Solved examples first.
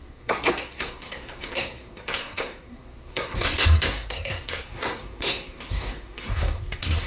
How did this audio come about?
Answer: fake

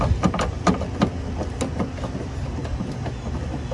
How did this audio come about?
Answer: real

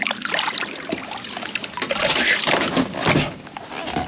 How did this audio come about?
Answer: real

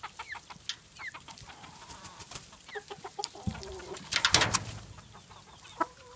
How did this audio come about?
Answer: real